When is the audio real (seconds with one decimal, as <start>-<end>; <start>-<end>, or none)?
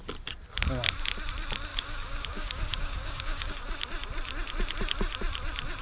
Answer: 0.0-1.7; 3.5-5.8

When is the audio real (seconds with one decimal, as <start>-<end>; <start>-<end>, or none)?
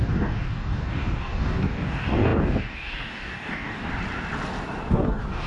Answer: 3.9-4.9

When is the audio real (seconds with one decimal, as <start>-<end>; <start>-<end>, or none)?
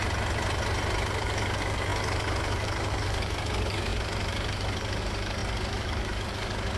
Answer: 0.0-1.2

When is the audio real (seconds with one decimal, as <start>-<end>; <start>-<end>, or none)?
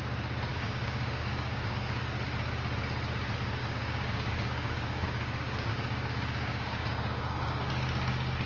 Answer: 0.0-0.5; 2.0-3.6; 7.7-8.5